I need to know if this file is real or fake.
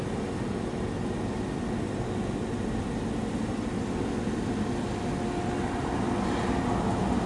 real